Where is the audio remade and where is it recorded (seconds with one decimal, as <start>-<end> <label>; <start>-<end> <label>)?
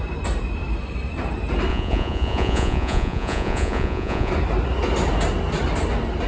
0.0-1.7 recorded; 1.7-4.3 remade; 4.3-6.3 recorded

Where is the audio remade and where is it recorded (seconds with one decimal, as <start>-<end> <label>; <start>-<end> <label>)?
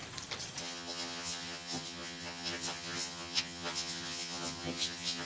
0.0-0.6 recorded; 0.6-5.3 remade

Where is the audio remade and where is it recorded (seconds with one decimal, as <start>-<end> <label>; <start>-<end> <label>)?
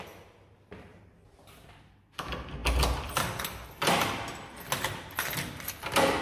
0.0-6.2 recorded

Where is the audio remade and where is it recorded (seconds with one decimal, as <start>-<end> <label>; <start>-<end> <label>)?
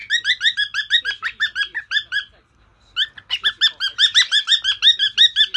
0.0-5.6 recorded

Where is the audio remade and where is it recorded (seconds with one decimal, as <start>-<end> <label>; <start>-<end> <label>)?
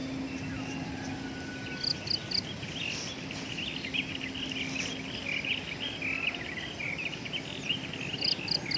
0.0-8.8 recorded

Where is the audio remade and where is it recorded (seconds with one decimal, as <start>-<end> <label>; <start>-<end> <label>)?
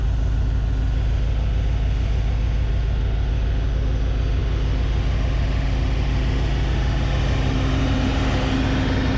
0.0-9.2 recorded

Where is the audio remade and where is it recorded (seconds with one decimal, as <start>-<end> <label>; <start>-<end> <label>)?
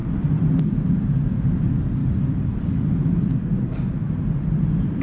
0.0-0.9 remade; 0.9-2.0 recorded; 2.0-5.0 remade